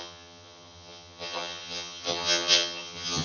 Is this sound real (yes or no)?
no